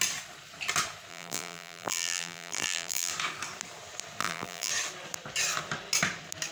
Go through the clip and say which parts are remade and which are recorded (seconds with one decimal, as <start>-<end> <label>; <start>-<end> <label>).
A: 0.0-1.1 recorded; 1.1-3.1 remade; 3.1-4.2 recorded; 4.2-4.7 remade; 4.7-6.5 recorded